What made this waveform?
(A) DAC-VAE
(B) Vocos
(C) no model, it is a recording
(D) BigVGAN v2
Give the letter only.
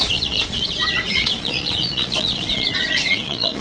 B